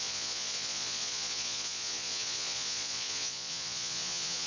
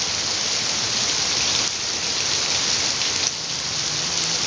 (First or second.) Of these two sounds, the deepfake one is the first